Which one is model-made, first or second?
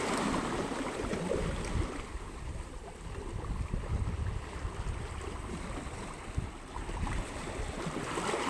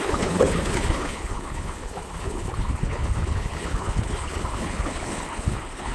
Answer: second